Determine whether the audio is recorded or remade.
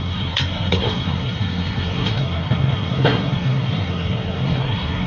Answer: remade